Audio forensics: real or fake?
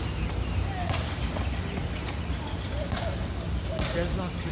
real